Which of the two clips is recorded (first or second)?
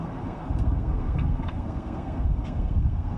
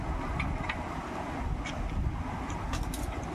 second